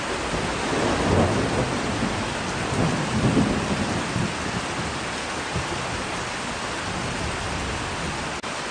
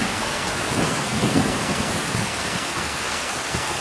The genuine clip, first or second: first